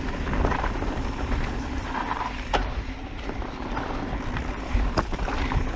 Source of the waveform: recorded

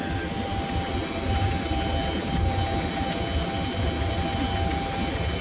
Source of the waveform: recorded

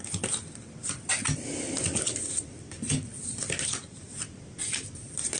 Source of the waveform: recorded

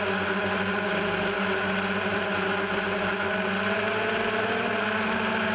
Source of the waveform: recorded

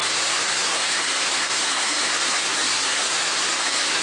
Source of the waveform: remade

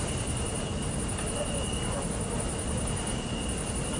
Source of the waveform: recorded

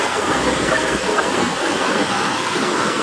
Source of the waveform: remade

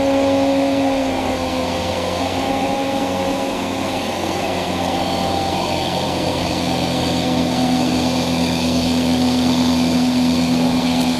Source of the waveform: remade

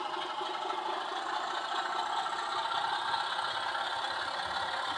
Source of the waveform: recorded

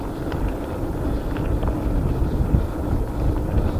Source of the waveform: recorded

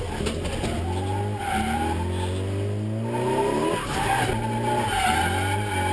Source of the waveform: recorded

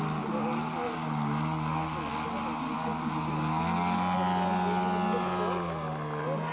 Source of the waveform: recorded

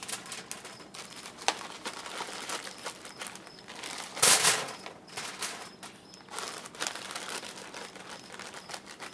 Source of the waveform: recorded